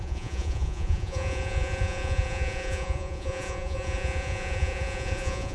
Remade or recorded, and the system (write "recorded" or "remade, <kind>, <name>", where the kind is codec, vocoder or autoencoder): remade, vocoder, Vocos